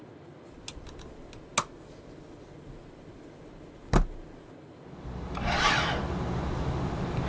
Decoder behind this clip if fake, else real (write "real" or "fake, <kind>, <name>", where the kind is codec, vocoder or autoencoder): real